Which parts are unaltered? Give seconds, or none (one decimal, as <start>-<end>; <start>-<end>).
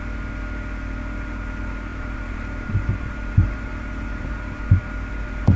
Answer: 0.0-1.9; 4.4-5.6